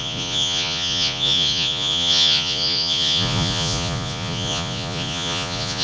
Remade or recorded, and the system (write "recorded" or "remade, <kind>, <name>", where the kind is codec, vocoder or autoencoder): remade, vocoder, Vocos